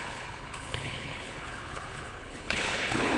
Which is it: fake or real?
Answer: fake